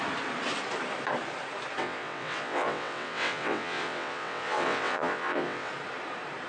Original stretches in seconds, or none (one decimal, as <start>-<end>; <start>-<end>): 0.0-1.8; 5.7-6.5

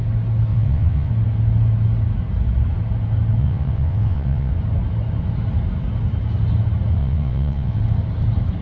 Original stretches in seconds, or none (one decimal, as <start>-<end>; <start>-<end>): 0.0-0.5; 1.1-3.4; 4.5-7.0; 7.8-8.6

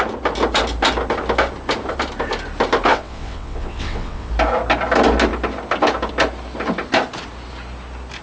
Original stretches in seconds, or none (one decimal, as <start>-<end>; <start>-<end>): 0.0-2.9; 4.3-8.2

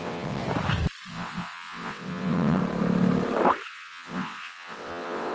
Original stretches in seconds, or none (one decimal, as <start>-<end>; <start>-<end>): 0.4-1.1; 2.6-3.7

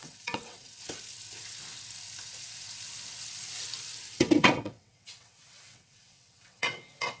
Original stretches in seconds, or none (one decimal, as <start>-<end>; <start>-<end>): 0.8-4.2

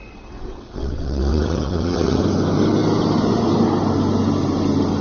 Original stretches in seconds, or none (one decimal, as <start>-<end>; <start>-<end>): 2.2-5.0

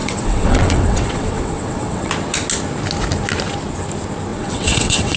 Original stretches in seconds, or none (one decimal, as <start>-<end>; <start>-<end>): 2.1-4.3

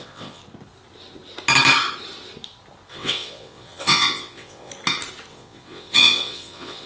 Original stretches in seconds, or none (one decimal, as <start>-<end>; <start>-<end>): 0.4-2.9; 4.7-5.3